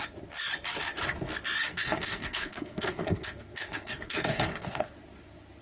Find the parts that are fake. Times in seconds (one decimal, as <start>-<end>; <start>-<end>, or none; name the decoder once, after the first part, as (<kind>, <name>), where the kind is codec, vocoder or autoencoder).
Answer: 1.7-4.9 (codec, SNAC)

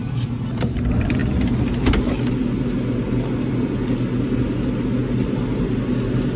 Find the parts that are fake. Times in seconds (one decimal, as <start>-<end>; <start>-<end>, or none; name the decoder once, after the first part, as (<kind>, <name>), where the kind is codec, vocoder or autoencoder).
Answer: none